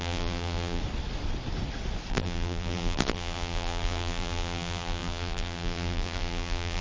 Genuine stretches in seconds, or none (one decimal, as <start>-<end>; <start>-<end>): 0.8-2.1